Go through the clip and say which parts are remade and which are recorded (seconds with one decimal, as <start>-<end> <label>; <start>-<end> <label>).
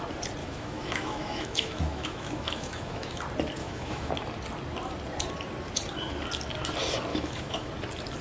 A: 0.0-0.4 recorded; 0.4-3.2 remade; 3.2-3.6 recorded; 3.6-4.1 remade; 4.1-7.1 recorded; 7.1-7.7 remade; 7.7-8.2 recorded